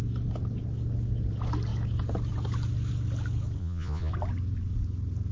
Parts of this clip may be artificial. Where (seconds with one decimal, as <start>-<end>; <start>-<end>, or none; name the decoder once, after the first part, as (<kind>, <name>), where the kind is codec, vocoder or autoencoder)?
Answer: 3.6-4.1 (vocoder, Vocos)